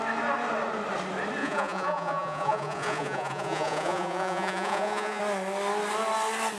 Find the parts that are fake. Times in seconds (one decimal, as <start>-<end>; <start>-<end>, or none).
1.4-5.2